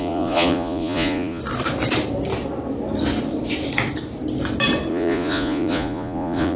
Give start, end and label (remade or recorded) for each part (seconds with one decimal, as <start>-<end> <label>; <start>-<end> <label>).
0.0-1.4 remade; 1.4-4.9 recorded; 4.9-6.6 remade